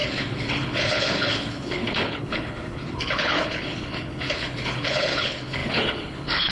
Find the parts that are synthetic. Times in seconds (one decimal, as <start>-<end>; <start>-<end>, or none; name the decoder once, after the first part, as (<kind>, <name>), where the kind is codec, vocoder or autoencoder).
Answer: 0.0-6.5 (codec, HILCodec)